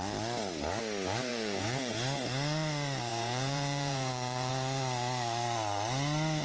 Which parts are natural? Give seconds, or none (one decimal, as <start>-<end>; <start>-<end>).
0.0-1.3; 1.9-3.1; 4.5-6.4